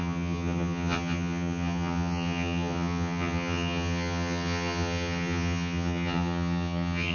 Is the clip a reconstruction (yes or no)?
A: yes